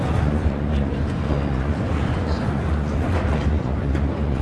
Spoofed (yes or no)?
yes